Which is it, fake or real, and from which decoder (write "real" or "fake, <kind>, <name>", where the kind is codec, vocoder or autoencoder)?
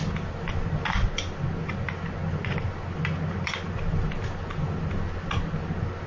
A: real